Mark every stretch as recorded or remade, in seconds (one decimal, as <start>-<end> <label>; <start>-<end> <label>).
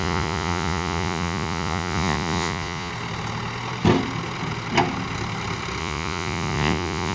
0.0-2.9 remade; 2.9-5.8 recorded; 5.8-7.1 remade